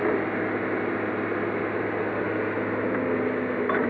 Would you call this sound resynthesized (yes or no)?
no